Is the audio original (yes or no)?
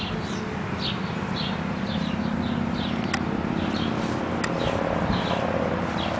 yes